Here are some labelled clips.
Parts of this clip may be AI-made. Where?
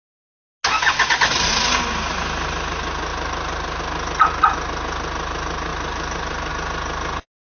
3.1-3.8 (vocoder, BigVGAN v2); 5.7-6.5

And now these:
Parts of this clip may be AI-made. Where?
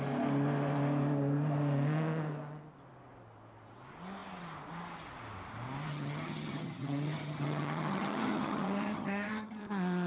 5.9-9.6 (vocoder, HiFi-GAN)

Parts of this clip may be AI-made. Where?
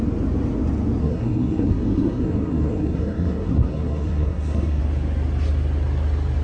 1.0-4.8 (codec, SNAC)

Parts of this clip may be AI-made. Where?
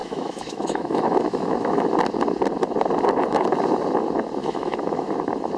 0.0-1.9 (autoencoder, DAC-VAE); 4.4-5.1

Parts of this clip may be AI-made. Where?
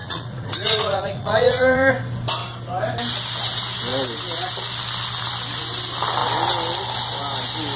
0.0-1.9 (vocoder, Vocos)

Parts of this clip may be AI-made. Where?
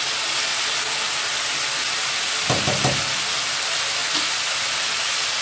none